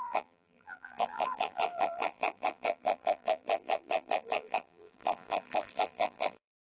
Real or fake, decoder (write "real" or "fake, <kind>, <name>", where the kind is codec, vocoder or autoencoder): fake, vocoder, BigVGAN v2